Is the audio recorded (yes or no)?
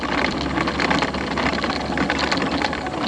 yes